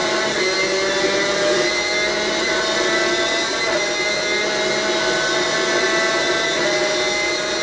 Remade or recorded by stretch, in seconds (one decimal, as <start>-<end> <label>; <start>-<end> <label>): 0.0-7.6 recorded